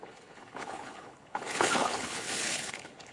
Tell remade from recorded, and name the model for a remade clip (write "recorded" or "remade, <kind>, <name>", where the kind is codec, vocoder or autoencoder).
remade, codec, HILCodec